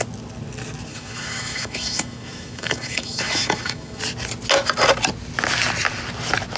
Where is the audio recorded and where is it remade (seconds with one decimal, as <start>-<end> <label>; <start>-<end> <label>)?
0.0-0.9 recorded; 0.9-4.0 remade; 4.0-6.6 recorded